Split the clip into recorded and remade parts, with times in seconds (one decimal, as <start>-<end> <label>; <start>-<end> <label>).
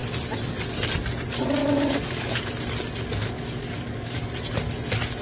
0.0-1.6 recorded; 1.6-2.5 remade; 2.5-3.1 recorded; 3.1-4.2 remade; 4.2-5.2 recorded